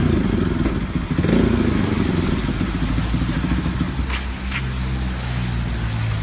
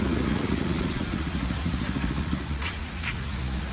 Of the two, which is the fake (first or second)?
second